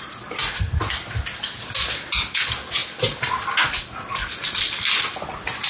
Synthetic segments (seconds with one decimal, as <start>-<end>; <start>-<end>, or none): none

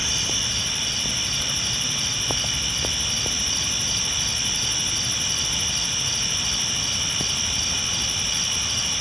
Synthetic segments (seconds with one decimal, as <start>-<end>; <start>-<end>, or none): none

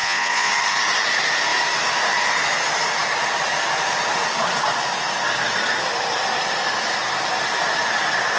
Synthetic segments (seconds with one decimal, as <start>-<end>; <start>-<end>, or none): 0.0-0.5

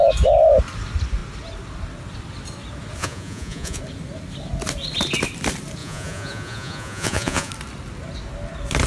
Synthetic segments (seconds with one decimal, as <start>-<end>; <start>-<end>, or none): 3.0-3.8; 5.8-7.5